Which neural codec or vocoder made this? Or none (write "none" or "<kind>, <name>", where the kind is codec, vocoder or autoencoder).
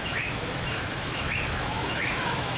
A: autoencoder, DAC-VAE